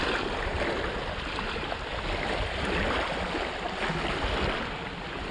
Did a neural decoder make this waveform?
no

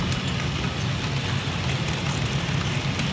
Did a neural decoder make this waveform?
no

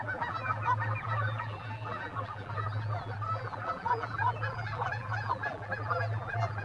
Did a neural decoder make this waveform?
yes